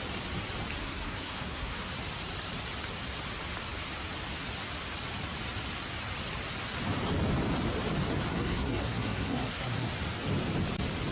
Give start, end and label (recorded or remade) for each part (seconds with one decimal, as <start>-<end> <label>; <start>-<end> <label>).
0.0-0.8 recorded; 0.8-1.9 remade; 1.9-8.3 recorded; 8.3-9.9 remade; 9.9-11.1 recorded